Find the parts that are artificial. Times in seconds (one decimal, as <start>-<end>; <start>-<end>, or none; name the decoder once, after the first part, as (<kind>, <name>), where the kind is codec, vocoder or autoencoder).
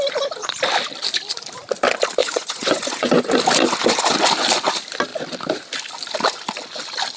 2.2-3.2 (vocoder, Vocos)